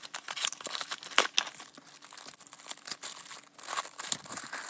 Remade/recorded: recorded